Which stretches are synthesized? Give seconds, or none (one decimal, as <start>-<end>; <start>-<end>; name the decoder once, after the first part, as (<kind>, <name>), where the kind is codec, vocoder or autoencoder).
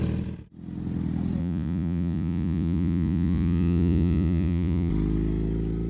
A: 1.4-4.9 (vocoder, Vocos)